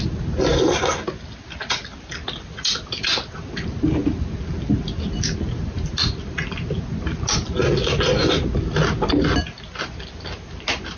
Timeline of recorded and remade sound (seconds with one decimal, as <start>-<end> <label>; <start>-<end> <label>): 0.0-11.0 recorded